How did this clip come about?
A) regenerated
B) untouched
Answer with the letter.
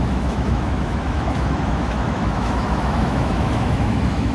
A